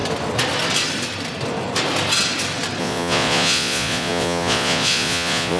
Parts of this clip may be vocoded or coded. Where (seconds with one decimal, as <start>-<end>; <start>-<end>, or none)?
2.8-5.6